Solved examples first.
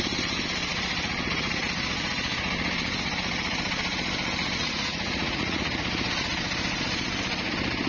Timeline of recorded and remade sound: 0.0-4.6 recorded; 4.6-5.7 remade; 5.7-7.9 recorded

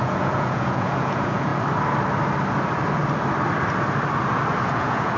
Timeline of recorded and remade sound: 0.0-1.5 remade; 1.5-4.6 recorded; 4.6-5.2 remade

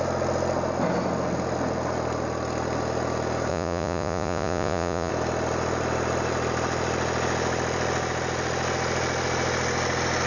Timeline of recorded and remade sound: 0.0-3.5 recorded; 3.5-5.1 remade; 5.1-10.3 recorded

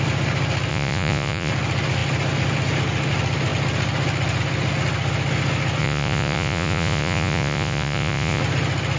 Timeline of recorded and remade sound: 0.0-0.7 recorded; 0.7-1.5 remade; 1.5-5.8 recorded; 5.8-8.4 remade; 8.4-9.0 recorded